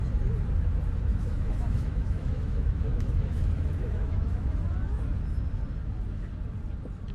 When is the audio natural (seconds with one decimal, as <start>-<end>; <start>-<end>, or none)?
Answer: 0.0-1.1; 4.6-7.1